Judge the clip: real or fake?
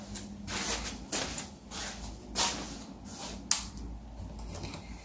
real